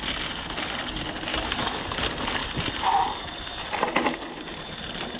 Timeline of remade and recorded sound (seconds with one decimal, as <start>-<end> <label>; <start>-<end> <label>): 0.0-1.3 recorded; 1.3-1.8 remade; 1.8-5.2 recorded